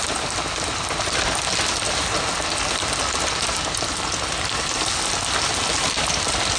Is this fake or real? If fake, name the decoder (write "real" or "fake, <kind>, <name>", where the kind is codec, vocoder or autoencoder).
real